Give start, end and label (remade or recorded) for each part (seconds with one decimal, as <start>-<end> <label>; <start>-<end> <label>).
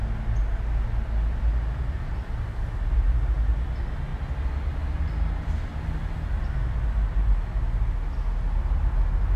0.0-9.4 recorded